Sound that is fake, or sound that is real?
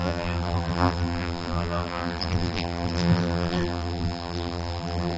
fake